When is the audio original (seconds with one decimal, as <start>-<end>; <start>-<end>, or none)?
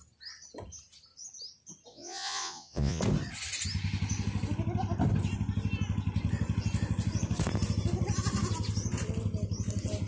0.0-1.9; 3.0-10.1